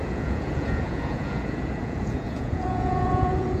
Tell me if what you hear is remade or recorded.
remade